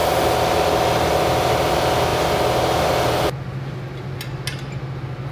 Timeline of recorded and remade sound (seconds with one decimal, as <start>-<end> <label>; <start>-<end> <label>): 0.0-2.1 remade; 2.1-5.3 recorded